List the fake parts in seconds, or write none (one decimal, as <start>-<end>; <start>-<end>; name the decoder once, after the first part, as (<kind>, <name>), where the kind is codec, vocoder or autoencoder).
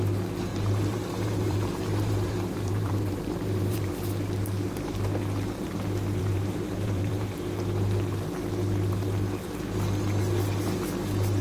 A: 0.5-3.9 (vocoder, BigVGAN v2); 6.2-7.3